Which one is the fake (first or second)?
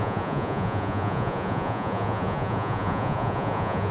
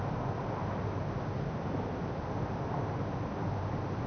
first